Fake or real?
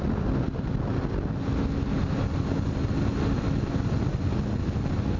real